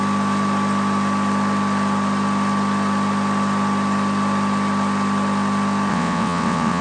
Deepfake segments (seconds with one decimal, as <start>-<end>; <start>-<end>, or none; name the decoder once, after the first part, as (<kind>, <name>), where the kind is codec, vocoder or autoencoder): 5.9-6.8 (vocoder, WaveNeXt)